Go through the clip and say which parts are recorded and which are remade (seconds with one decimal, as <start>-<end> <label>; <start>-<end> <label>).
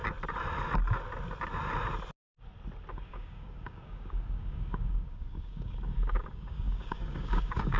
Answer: 0.0-2.9 recorded; 2.9-7.8 remade